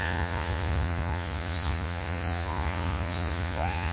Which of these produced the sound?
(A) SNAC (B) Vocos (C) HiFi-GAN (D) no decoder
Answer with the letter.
B